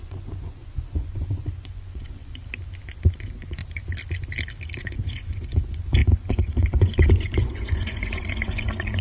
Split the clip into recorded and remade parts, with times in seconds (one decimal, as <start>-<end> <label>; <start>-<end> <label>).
0.0-2.4 remade; 2.4-3.2 recorded; 3.2-3.6 remade; 3.6-4.8 recorded; 4.8-9.0 remade